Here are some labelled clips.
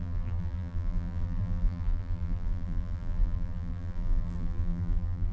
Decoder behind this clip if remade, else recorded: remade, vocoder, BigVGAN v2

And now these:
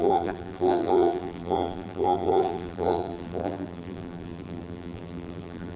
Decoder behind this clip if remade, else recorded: remade, vocoder, BigVGAN v2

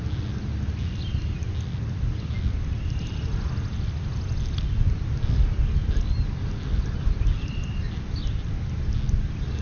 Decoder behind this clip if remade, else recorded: recorded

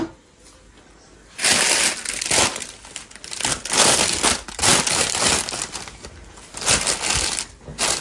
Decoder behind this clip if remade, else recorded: recorded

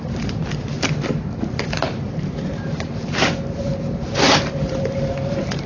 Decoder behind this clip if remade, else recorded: remade, vocoder, BigVGAN v2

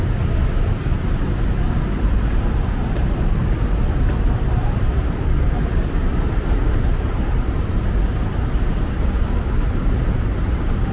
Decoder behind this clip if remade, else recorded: remade, vocoder, BigVGAN v2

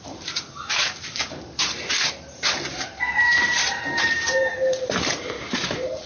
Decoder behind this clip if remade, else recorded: remade, vocoder, BigVGAN v2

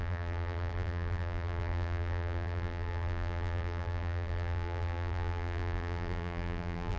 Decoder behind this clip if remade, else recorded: remade, vocoder, BigVGAN v2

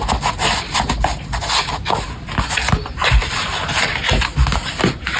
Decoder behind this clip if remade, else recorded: recorded